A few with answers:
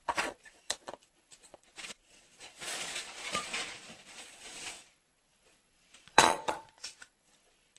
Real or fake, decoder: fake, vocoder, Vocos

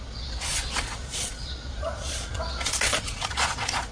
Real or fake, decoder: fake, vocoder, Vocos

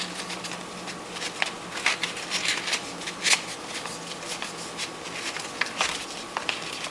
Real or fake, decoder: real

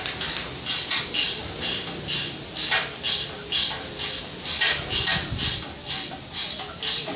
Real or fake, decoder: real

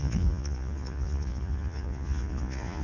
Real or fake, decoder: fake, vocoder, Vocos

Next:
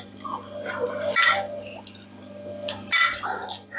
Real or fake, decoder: real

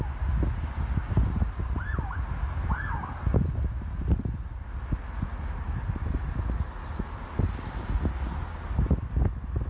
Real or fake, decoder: real